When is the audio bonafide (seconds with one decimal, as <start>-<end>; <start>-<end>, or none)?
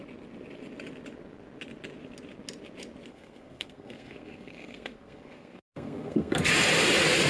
0.0-3.1; 6.4-7.3